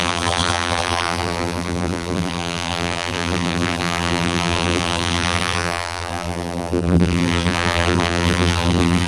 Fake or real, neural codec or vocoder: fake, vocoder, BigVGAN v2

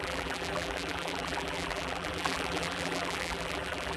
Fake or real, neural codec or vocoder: fake, vocoder, BigVGAN v2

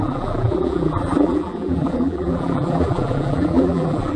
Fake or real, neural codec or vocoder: fake, vocoder, BigVGAN v2